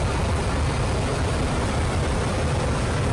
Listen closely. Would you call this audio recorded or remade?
recorded